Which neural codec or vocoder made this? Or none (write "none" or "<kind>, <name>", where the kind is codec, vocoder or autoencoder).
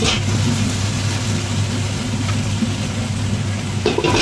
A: none